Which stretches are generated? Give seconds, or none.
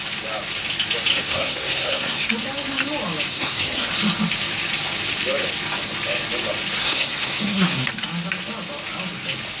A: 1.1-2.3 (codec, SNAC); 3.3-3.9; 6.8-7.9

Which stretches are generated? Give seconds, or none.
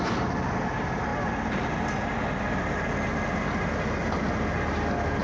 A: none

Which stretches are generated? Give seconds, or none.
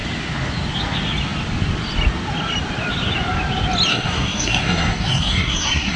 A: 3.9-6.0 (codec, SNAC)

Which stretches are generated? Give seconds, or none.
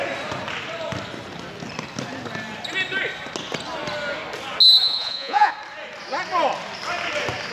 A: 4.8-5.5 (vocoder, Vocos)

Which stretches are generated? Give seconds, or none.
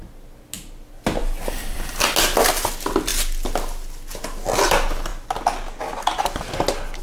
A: none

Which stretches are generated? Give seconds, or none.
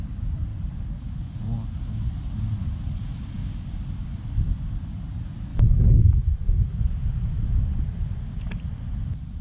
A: 5.5-6.1 (autoencoder, DAC-VAE)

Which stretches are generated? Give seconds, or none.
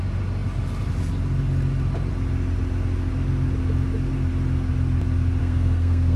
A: 5.4-6.2 (codec, SNAC)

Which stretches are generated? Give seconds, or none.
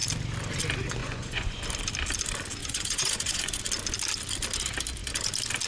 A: 1.0-1.6 (vocoder, Vocos); 2.6-3.6